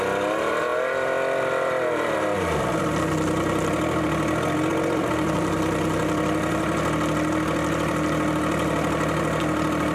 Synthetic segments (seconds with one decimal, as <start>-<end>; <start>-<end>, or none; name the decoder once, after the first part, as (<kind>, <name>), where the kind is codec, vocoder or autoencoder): 0.7-3.0 (vocoder, BigVGAN v2); 4.7-5.5